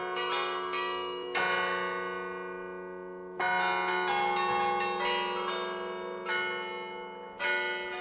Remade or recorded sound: recorded